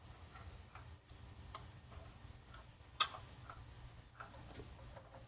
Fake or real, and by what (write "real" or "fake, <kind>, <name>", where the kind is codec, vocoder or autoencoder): real